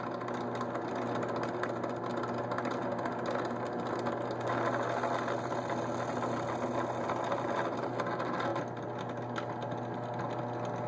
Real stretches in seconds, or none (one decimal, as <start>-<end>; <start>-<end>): 0.0-10.9